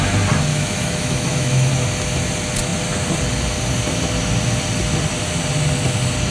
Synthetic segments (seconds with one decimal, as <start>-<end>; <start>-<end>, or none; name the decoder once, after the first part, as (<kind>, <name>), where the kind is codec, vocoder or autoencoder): 0.5-1.7 (autoencoder, DAC-VAE)